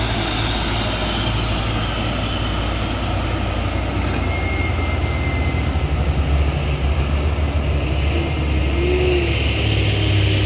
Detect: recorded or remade recorded